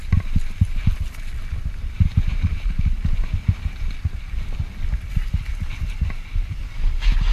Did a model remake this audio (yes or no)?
no